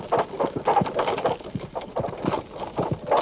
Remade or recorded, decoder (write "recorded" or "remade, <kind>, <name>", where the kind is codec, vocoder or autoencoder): recorded